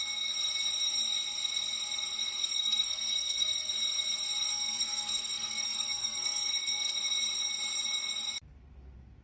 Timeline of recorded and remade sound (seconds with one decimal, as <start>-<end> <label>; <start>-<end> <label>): 0.0-2.4 recorded; 2.4-3.7 remade; 3.7-4.5 recorded; 4.5-7.0 remade; 7.0-9.2 recorded